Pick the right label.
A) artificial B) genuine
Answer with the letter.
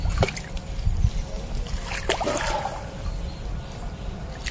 B